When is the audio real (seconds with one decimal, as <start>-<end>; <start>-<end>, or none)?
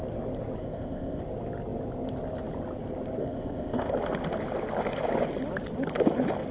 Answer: 0.0-0.6; 1.2-3.2; 3.9-6.5